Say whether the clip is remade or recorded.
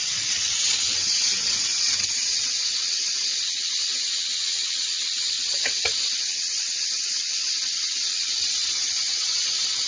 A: remade